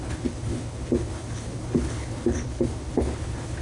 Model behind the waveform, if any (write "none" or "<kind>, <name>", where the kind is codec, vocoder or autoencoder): codec, HILCodec